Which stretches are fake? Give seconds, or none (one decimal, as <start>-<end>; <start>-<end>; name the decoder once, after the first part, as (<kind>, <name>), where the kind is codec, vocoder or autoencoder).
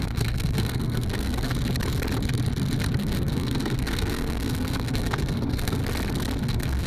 0.0-1.5 (codec, SNAC); 3.0-5.8; 6.4-6.9